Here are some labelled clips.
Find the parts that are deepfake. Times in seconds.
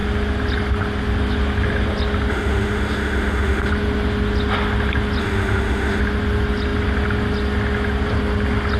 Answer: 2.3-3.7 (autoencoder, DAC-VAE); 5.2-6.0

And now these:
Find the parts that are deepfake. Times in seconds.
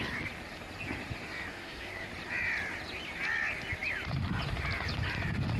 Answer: 1.5-2.1 (codec, SNAC)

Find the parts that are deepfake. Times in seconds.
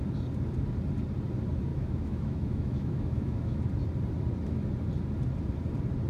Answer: 1.7-3.6 (autoencoder, DAC-VAE)